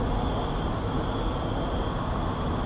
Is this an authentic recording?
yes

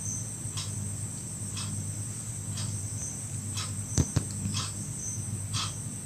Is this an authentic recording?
yes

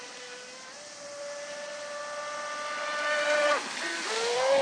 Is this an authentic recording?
yes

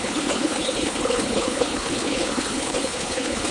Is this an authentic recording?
no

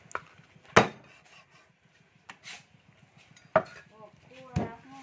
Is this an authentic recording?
yes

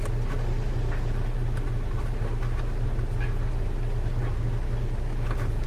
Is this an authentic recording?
yes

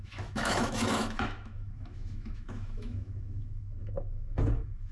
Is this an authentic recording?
no